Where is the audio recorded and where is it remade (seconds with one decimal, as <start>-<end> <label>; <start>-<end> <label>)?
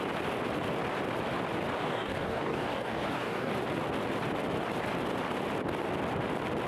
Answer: 0.0-1.8 recorded; 1.8-3.5 remade; 3.5-6.7 recorded